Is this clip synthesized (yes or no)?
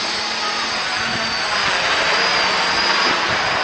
no